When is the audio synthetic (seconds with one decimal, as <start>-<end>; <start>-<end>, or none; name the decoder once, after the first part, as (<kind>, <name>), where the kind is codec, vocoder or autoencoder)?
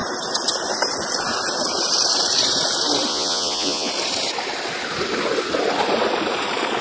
3.1-3.9 (vocoder, Vocos)